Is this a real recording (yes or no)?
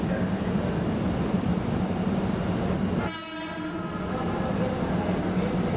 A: no